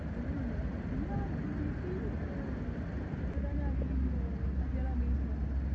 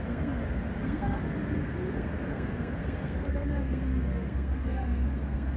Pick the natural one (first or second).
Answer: first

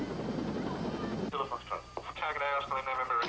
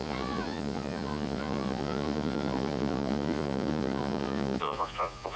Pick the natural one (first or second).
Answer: first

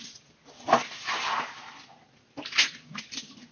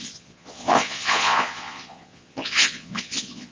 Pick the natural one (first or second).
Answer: first